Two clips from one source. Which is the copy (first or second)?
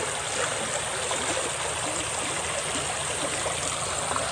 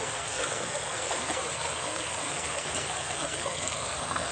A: second